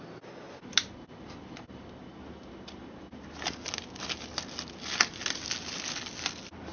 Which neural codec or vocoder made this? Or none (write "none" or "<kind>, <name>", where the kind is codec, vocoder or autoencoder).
none